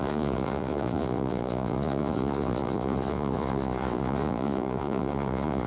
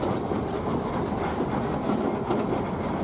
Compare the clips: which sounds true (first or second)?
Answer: second